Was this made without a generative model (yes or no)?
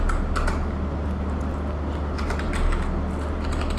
yes